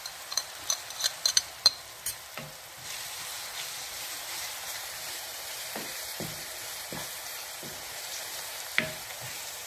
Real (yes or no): no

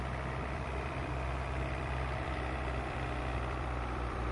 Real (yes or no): no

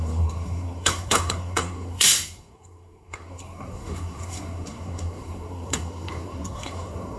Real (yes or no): no